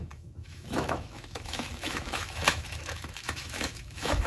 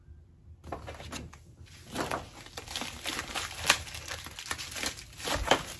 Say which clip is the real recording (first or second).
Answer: second